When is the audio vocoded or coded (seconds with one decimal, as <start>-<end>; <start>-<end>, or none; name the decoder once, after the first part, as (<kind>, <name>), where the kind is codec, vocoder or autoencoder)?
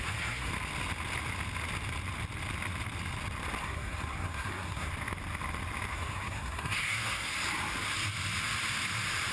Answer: 0.0-0.5 (codec, SNAC); 3.6-4.9; 5.9-7.3